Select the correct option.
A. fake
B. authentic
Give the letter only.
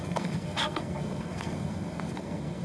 A